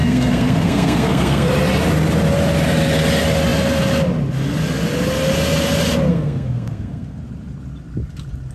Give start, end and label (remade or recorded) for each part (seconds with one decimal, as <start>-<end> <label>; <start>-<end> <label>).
0.0-1.5 remade; 1.5-6.1 recorded; 6.1-7.2 remade; 7.2-8.5 recorded